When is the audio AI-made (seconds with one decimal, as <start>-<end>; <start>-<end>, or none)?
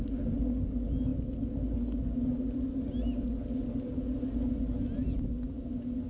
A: none